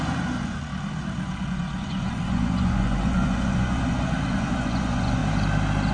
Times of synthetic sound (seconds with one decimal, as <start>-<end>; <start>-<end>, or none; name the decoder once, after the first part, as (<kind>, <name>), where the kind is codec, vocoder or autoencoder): 0.0-0.7 (vocoder, Vocos); 1.4-5.2